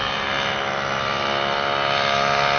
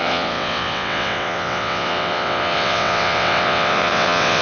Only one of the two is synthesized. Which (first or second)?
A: second